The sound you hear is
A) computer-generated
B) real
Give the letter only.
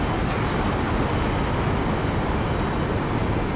B